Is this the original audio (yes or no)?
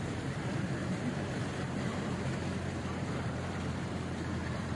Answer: no